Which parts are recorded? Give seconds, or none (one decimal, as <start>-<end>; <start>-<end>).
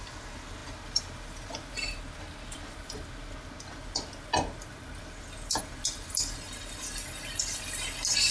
0.0-8.3